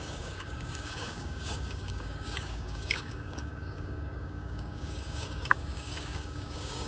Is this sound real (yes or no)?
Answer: no